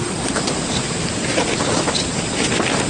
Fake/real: real